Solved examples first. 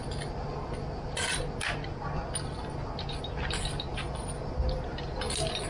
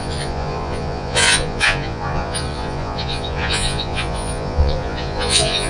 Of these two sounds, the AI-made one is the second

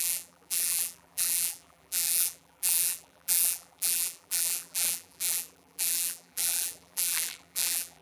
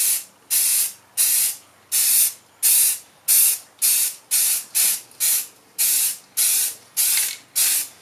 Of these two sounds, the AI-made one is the first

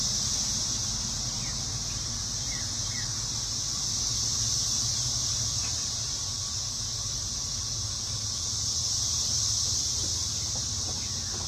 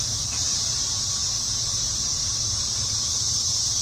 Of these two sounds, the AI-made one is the second